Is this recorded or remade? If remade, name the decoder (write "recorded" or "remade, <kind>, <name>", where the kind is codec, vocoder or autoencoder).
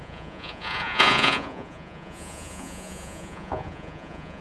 remade, vocoder, Vocos